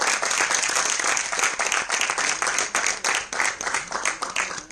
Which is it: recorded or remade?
recorded